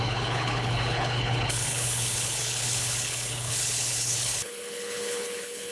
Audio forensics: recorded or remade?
remade